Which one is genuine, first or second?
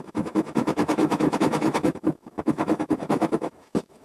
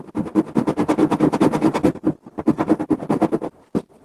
second